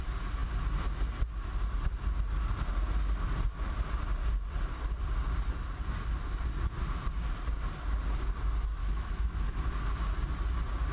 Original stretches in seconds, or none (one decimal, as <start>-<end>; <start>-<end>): 0.0-8.8; 9.7-10.9